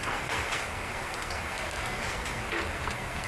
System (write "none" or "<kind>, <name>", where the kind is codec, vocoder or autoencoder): codec, SNAC